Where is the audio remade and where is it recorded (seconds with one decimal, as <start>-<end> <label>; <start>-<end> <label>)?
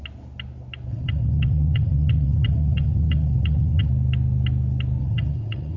0.0-0.9 recorded; 0.9-3.9 remade; 3.9-5.0 recorded; 5.0-5.8 remade